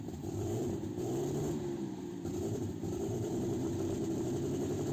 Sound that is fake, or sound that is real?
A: fake